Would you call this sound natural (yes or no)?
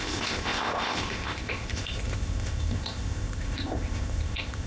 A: no